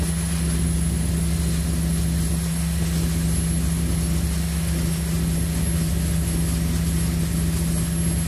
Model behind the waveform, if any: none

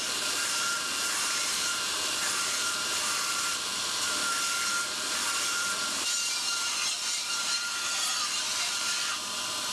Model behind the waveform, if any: vocoder, BigVGAN v2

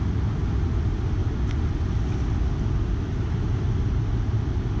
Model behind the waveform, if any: none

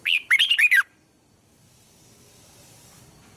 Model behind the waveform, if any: vocoder, BigVGAN v2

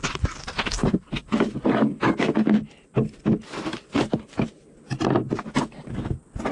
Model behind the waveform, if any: vocoder, BigVGAN v2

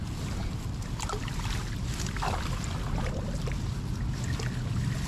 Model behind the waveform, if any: none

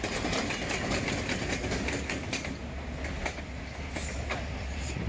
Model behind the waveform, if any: none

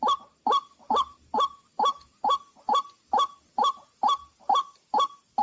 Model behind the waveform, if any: none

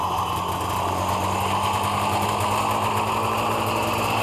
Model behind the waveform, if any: none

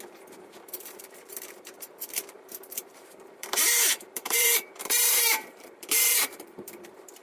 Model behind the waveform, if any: vocoder, BigVGAN v2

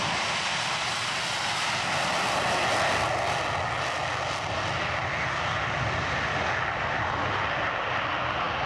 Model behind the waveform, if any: none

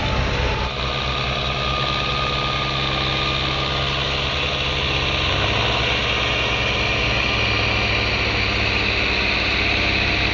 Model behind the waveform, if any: none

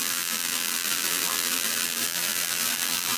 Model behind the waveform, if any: vocoder, BigVGAN v2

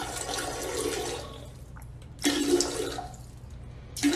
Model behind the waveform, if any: none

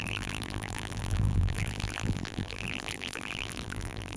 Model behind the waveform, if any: vocoder, BigVGAN v2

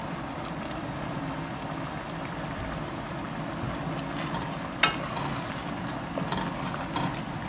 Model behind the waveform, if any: none